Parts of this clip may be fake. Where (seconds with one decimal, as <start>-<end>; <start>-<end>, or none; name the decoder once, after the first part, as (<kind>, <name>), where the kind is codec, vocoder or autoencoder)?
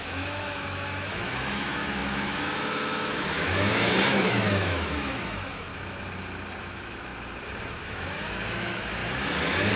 0.0-5.7 (autoencoder, DAC-VAE); 6.6-7.1; 7.8-9.0